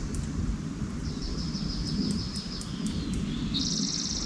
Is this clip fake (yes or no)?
no